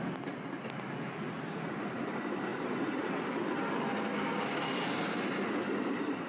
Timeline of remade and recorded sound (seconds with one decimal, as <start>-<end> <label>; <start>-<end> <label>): 0.0-6.3 recorded